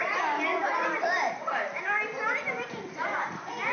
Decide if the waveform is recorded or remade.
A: recorded